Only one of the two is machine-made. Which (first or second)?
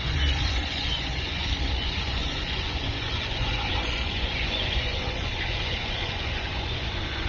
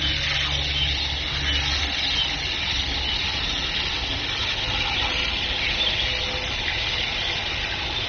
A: first